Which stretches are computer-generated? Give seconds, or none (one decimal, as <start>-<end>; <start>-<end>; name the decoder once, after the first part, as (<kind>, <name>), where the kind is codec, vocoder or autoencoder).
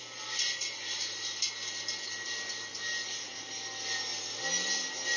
none